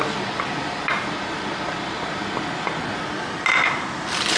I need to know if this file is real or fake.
real